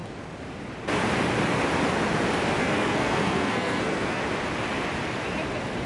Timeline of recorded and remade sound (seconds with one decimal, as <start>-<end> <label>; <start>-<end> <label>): 0.0-2.6 recorded; 2.6-4.2 remade; 4.2-5.9 recorded